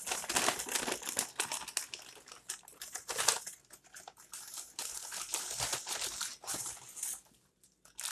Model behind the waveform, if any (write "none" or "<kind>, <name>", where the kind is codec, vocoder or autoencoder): none